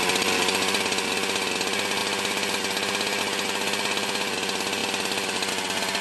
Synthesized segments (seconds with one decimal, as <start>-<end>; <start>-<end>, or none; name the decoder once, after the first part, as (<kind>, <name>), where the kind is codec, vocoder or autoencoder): 2.0-3.2 (vocoder, BigVGAN v2); 4.8-5.5